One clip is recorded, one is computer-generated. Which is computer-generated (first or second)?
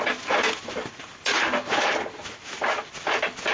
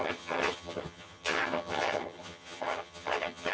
second